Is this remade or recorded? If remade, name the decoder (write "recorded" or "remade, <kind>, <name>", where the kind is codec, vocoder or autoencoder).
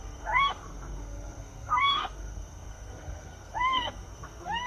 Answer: remade, codec, SNAC